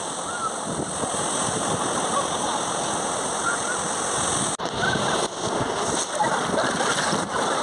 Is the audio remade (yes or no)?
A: no